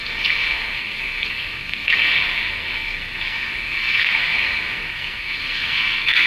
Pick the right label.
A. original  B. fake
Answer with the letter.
B